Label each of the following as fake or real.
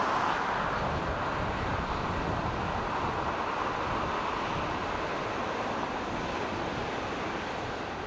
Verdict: real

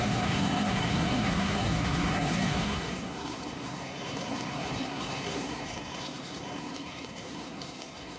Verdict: fake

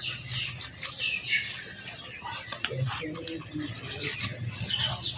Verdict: real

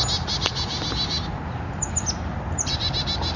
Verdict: real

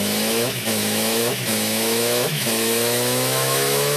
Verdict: fake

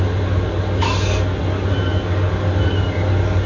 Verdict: real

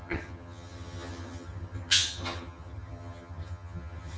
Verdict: fake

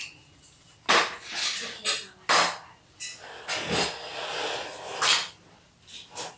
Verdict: real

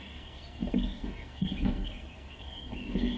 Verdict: fake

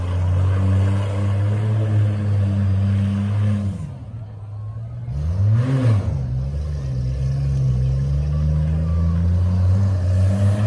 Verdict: real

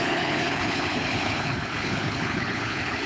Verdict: fake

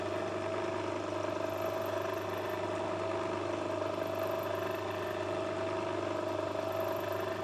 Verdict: real